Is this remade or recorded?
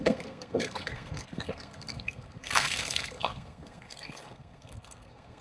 remade